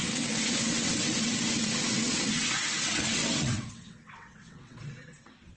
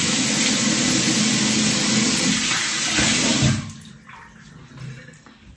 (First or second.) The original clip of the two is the second